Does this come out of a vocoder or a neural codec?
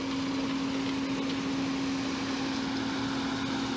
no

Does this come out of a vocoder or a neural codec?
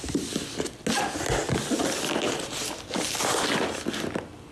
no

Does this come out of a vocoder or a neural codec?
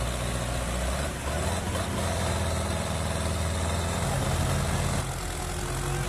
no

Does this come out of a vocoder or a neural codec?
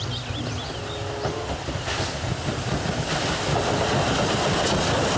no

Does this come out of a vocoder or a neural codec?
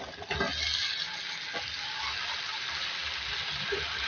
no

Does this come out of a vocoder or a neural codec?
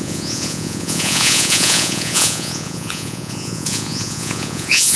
yes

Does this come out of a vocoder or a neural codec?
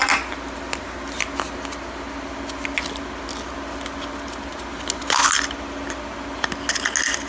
no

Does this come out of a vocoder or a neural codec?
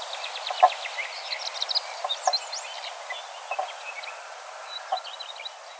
no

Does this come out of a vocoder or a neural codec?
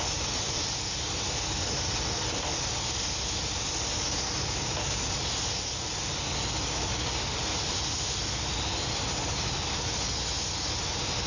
no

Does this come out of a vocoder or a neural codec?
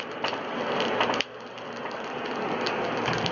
no